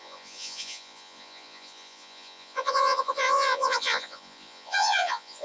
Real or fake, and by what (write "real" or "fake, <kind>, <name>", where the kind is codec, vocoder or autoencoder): fake, vocoder, Vocos